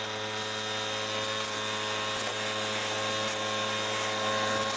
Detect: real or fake real